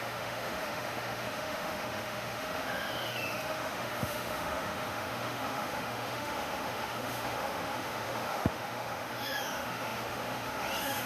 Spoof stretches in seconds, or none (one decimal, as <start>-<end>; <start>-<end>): 0.0-11.1